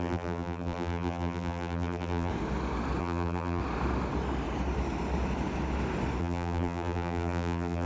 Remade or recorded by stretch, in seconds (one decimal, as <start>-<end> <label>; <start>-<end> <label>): 0.0-2.3 remade; 2.3-3.0 recorded; 3.0-3.6 remade; 3.6-6.2 recorded; 6.2-7.9 remade